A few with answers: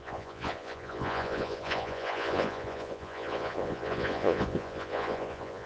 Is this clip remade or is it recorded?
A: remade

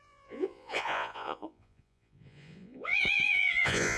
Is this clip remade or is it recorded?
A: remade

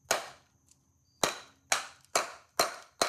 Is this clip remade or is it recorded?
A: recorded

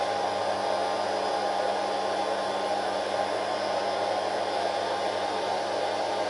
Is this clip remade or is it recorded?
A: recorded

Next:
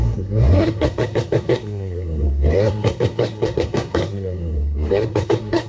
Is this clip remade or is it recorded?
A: remade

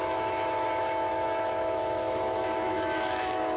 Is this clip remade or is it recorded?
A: remade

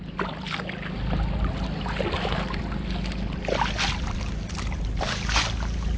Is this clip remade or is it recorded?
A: recorded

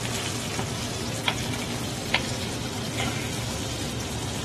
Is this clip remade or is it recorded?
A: recorded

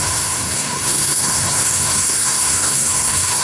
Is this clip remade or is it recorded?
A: remade